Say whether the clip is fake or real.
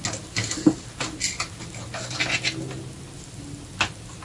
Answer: real